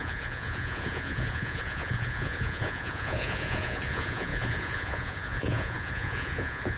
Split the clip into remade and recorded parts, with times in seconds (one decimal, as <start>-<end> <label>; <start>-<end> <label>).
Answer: 0.0-6.8 remade